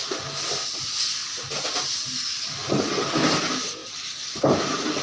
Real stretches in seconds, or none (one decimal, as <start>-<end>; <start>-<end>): 0.0-5.0